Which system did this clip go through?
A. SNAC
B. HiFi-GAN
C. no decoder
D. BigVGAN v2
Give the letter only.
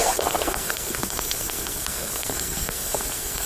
A